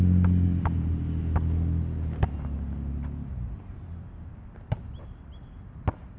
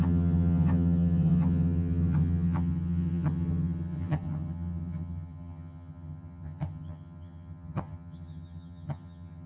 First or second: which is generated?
second